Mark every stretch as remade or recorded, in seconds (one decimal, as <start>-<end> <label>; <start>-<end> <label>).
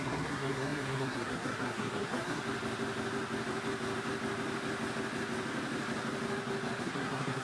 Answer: 0.0-2.4 remade; 2.4-6.8 recorded; 6.8-7.4 remade